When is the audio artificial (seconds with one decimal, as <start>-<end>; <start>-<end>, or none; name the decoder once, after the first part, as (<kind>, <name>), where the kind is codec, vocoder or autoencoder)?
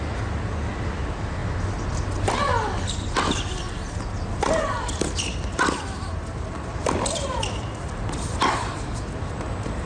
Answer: none